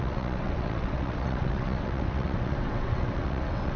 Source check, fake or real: fake